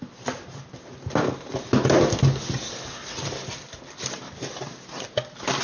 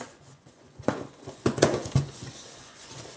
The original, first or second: first